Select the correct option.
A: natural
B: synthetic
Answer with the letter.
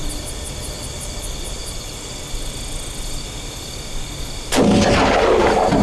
A